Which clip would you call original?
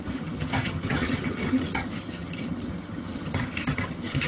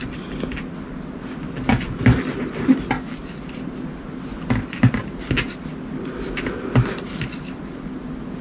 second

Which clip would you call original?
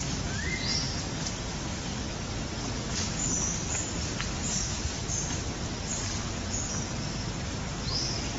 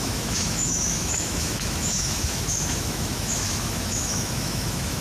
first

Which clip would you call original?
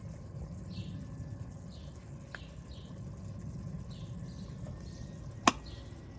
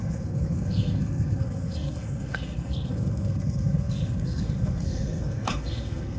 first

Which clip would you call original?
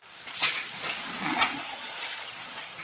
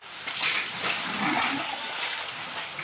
second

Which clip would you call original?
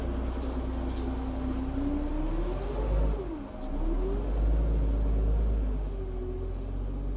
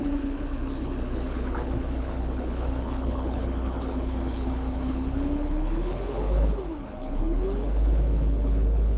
first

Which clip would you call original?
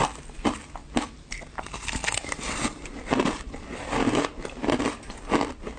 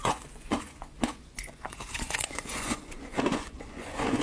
first